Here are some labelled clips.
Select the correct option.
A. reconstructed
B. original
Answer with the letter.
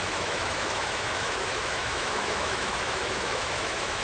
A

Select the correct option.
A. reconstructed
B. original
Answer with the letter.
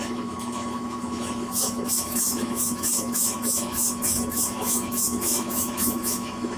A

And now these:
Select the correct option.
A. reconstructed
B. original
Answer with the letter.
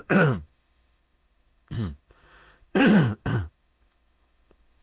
A